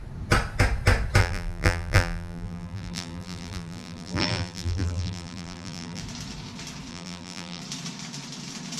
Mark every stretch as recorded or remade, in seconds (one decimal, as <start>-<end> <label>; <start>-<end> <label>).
0.0-1.2 recorded; 1.2-6.0 remade; 6.0-6.9 recorded; 6.9-7.6 remade; 7.6-8.8 recorded